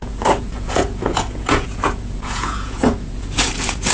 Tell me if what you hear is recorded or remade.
remade